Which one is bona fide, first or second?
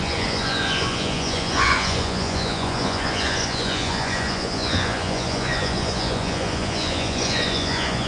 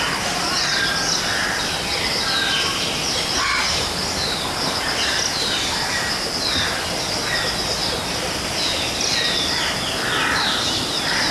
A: second